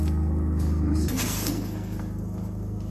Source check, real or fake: fake